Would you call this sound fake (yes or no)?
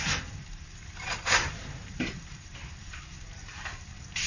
yes